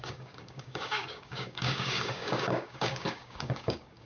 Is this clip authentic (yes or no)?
no